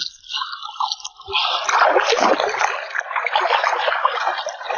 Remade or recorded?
recorded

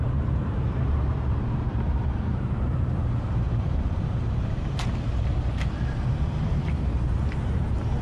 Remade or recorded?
remade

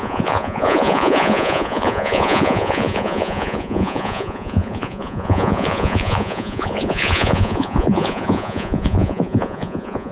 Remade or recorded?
remade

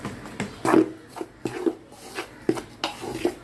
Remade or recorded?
recorded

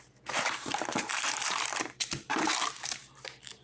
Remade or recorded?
remade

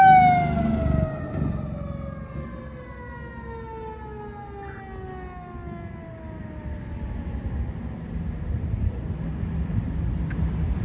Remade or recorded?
recorded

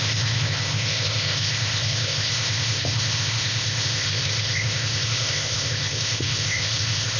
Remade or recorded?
remade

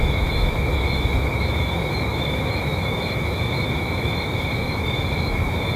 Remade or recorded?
remade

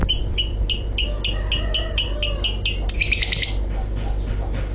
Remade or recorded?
recorded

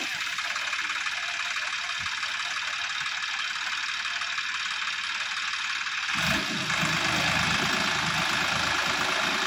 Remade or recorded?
recorded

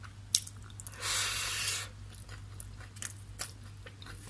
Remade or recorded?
recorded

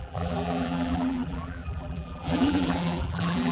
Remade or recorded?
remade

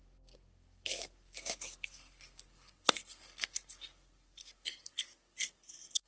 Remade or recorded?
remade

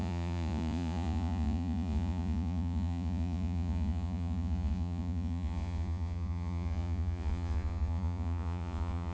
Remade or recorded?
remade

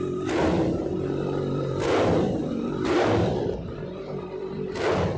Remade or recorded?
remade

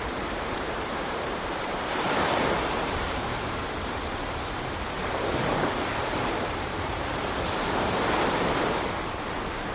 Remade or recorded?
remade